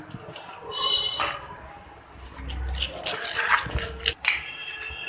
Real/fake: real